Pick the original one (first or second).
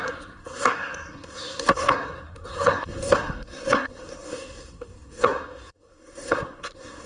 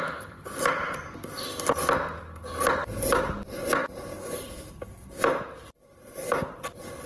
second